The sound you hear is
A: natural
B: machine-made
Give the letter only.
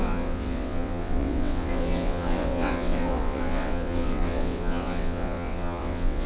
B